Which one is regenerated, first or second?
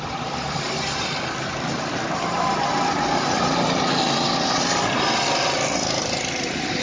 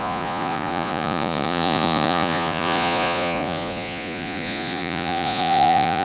second